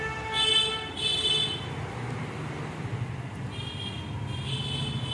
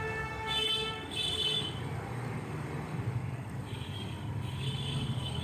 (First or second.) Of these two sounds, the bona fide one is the first